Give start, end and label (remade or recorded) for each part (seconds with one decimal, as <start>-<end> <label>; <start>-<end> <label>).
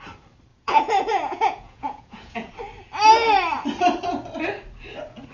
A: 0.0-0.5 recorded; 0.5-2.5 remade; 2.5-5.3 recorded